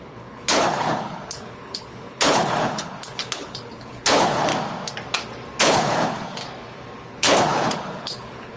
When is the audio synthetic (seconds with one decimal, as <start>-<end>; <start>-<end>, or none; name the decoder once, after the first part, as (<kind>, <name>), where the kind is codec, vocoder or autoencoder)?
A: 0.0-4.5 (codec, HILCodec); 5.6-6.4; 7.1-8.6